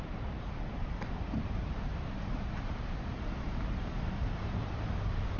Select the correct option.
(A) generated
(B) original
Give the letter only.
A